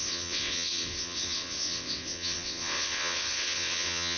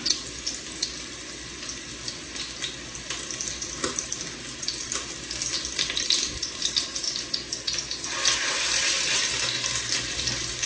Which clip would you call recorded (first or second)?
second